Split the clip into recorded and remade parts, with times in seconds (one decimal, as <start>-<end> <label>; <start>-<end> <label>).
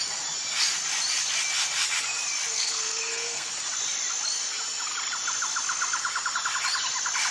0.0-2.5 recorded; 2.5-3.5 remade; 3.5-7.3 recorded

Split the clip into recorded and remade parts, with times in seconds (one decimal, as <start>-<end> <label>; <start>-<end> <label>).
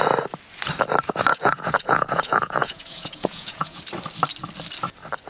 0.0-1.3 recorded; 1.3-3.8 remade; 3.8-5.3 recorded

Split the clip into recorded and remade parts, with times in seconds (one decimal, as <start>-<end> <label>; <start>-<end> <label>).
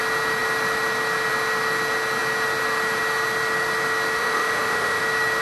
0.0-4.2 recorded; 4.2-5.0 remade; 5.0-5.4 recorded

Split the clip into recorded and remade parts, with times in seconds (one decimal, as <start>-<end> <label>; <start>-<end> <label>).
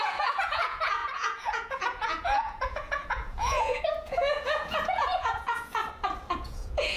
0.0-5.8 remade; 5.8-6.3 recorded; 6.3-7.0 remade